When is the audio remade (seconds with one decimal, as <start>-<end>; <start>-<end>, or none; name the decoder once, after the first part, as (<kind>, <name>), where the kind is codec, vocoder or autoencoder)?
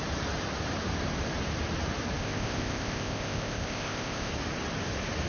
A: 2.2-4.3 (codec, ZipCodec)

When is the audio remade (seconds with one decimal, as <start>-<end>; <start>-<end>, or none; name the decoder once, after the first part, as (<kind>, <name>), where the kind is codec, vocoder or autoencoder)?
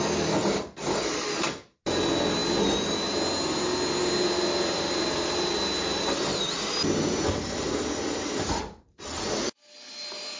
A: none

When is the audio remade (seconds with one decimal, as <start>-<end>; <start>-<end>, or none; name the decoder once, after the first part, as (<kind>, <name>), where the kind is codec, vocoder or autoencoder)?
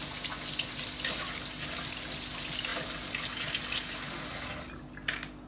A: none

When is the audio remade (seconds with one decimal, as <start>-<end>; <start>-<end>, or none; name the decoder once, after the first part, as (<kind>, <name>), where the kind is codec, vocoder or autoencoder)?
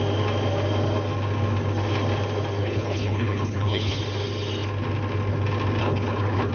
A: 2.6-4.0 (codec, HILCodec); 5.8-6.5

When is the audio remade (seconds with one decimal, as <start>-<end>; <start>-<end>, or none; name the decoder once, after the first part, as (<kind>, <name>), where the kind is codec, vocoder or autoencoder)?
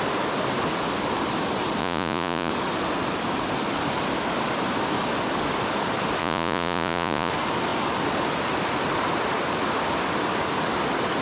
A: 1.8-2.5 (vocoder, Vocos); 6.2-7.3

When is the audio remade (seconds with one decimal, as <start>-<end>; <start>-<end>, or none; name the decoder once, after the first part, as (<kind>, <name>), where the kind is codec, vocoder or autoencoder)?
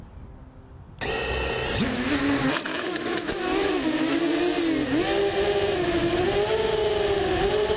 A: 2.7-4.2 (autoencoder, DAC-VAE)